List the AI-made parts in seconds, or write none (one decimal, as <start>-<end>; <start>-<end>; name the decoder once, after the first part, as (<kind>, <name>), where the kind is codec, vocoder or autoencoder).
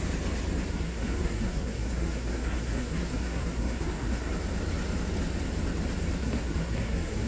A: 0.7-4.3 (codec, SNAC); 6.2-7.3